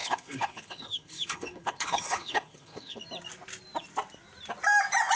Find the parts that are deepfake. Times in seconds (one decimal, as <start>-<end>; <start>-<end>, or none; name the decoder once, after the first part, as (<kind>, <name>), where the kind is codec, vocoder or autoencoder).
0.0-3.0 (codec, HILCodec)

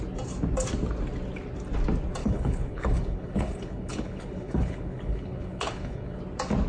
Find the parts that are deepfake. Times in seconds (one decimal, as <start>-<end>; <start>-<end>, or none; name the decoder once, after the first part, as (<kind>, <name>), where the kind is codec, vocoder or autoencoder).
2.2-6.2 (codec, HILCodec)

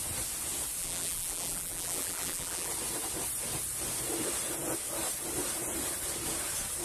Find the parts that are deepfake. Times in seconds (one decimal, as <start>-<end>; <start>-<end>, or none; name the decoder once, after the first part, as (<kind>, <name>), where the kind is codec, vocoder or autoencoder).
0.8-2.7 (vocoder, BigVGAN v2)

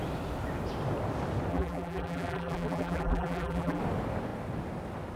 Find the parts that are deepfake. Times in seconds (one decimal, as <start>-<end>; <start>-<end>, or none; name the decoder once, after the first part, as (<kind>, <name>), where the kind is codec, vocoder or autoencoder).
1.5-3.8 (vocoder, BigVGAN v2)

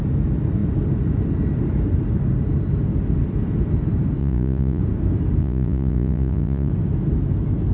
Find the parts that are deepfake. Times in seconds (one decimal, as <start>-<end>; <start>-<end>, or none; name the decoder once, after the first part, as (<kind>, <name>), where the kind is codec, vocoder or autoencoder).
4.2-4.8 (vocoder, Vocos); 5.4-6.7

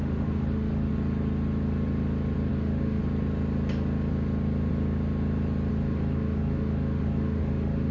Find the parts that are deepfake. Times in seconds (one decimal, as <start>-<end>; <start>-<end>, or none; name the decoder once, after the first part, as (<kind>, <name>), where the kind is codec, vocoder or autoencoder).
0.0-0.9 (autoencoder, DAC-VAE); 2.5-3.0; 5.7-7.9

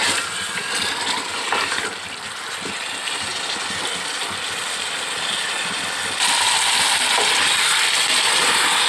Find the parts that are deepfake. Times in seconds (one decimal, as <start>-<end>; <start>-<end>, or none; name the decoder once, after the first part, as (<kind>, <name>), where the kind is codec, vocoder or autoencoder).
none

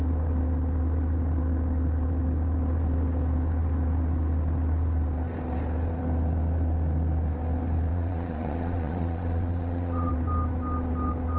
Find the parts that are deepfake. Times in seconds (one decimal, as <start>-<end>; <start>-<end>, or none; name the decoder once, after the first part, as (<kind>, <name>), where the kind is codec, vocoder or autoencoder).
7.9-10.1 (vocoder, Vocos)